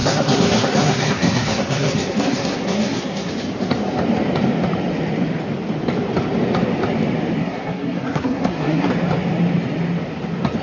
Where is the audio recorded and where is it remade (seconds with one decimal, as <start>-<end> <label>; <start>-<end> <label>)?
0.0-3.3 remade; 3.3-7.4 recorded; 7.4-8.9 remade; 8.9-10.6 recorded